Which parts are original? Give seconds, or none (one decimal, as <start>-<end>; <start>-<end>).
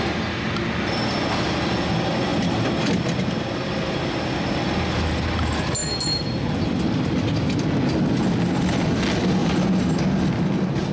0.0-10.9